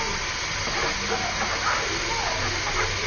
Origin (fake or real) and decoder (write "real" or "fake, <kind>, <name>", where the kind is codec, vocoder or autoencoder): real